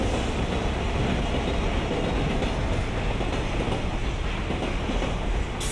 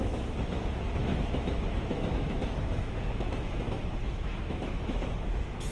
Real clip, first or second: first